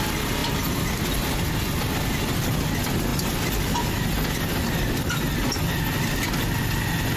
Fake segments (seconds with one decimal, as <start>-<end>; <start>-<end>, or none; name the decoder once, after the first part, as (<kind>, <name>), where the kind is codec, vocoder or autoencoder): 0.4-1.2 (vocoder, BigVGAN v2)